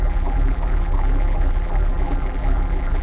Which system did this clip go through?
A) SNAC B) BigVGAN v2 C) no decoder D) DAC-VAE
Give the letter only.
B